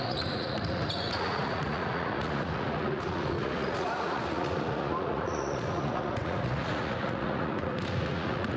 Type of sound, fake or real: fake